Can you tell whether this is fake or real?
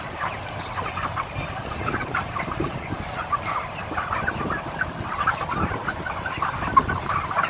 fake